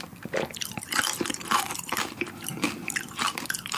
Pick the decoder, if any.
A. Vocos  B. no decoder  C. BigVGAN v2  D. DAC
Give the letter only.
B